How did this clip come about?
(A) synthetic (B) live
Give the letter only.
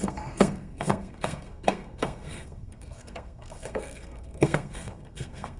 A